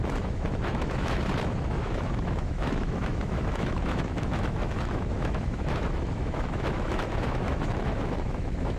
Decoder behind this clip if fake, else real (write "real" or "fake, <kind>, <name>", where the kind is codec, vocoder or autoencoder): fake, autoencoder, DAC-VAE